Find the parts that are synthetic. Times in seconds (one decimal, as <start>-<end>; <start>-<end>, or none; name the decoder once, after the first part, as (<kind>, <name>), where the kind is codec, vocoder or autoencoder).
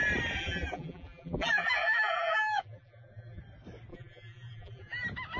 0.4-3.4 (vocoder, BigVGAN v2); 3.9-5.0